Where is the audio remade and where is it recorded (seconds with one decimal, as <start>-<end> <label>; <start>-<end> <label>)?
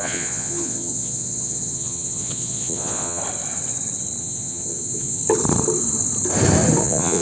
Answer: 0.0-3.2 remade; 3.2-4.2 recorded; 4.2-5.2 remade; 5.2-6.8 recorded; 6.8-7.2 remade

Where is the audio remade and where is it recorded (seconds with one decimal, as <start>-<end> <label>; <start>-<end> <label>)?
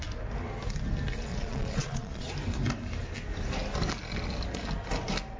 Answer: 0.0-1.3 recorded; 1.3-2.3 remade; 2.3-5.4 recorded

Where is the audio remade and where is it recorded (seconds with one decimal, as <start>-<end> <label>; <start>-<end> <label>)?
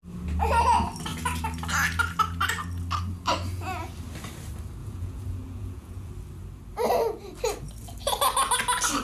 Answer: 0.0-4.8 recorded; 4.8-6.1 remade; 6.1-9.0 recorded